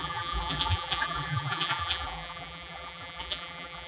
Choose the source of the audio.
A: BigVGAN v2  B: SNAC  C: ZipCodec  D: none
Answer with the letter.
A